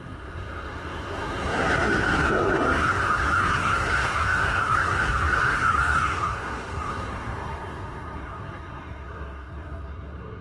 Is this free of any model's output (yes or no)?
no